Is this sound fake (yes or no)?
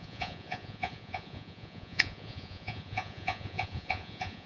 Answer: yes